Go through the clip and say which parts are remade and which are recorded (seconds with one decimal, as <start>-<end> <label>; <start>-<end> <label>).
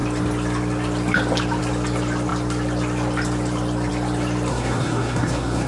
0.0-4.5 recorded; 4.5-5.7 remade